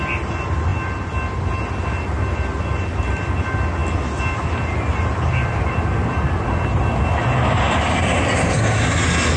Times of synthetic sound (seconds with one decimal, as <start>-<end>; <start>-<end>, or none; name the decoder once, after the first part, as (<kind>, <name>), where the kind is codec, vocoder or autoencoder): none